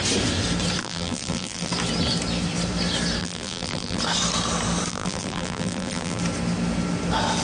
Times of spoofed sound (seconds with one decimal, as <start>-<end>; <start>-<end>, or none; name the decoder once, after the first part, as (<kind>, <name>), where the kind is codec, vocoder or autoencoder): 0.8-1.7 (vocoder, BigVGAN v2); 3.2-4.0; 4.9-6.2

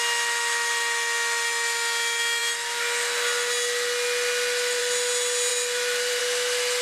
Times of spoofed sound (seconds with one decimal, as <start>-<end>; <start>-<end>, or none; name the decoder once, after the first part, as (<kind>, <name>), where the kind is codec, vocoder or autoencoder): 5.5-6.2 (vocoder, BigVGAN v2)

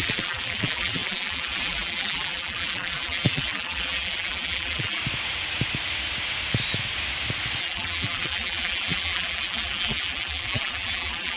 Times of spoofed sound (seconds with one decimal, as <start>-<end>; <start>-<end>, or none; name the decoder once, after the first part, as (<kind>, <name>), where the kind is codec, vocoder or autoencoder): 0.0-5.0 (vocoder, BigVGAN v2); 7.6-11.4

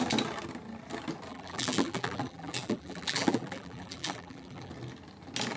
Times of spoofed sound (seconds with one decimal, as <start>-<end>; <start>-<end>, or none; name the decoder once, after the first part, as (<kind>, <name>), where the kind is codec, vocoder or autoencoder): 1.3-4.7 (vocoder, BigVGAN v2)